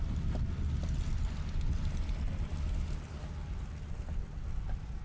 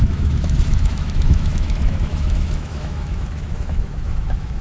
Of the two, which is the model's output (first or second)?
second